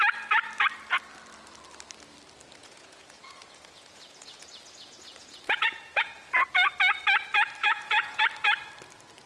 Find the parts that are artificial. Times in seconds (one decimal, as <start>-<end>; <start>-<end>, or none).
2.6-6.4; 7.6-8.2

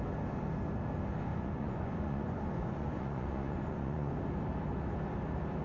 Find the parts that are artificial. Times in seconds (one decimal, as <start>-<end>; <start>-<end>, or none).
1.3-4.1

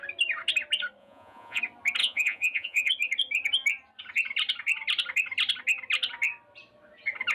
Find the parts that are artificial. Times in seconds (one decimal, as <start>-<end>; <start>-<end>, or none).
1.0-1.6; 2.0-2.9

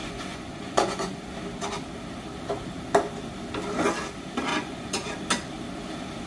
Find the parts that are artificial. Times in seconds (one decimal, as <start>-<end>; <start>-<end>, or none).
0.0-1.3; 4.5-5.1

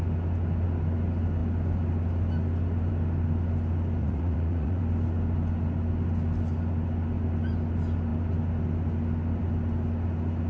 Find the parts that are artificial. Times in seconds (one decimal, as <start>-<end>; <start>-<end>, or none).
4.0-4.8

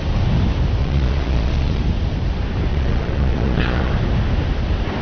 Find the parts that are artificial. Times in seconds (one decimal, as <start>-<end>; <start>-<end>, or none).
0.8-1.8; 2.7-3.9

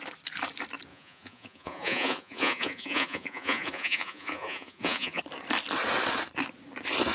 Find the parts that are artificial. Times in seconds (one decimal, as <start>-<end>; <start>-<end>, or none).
0.9-5.2